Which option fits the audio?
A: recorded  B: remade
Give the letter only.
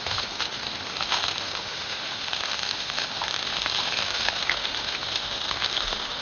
B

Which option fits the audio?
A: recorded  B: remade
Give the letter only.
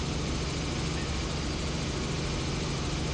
A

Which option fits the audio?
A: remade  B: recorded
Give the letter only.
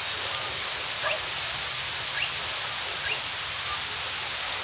B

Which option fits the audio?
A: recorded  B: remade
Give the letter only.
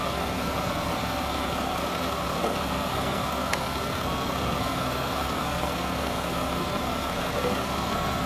B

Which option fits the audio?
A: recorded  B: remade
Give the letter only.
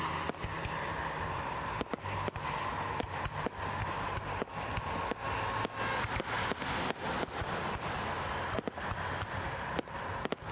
A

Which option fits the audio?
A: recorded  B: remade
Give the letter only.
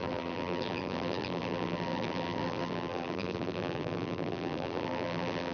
B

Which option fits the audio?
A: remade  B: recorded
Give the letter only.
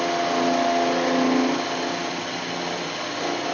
B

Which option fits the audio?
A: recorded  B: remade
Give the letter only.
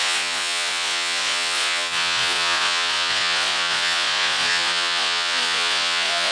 B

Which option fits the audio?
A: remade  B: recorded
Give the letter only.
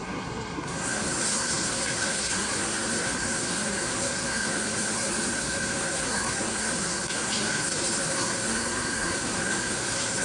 A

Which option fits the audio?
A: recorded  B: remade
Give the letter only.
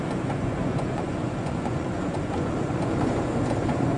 B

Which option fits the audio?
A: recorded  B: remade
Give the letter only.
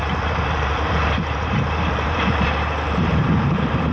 B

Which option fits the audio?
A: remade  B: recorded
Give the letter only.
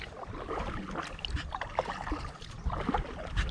B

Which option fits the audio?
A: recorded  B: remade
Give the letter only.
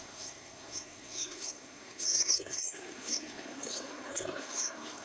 B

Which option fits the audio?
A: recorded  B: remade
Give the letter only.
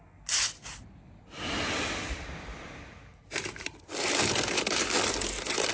A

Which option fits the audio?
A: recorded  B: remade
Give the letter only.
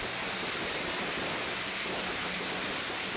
A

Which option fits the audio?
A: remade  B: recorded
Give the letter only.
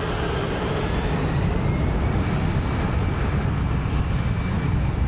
B